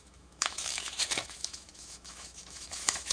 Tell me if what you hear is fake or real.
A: fake